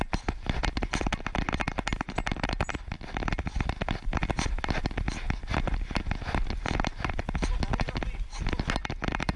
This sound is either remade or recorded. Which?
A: recorded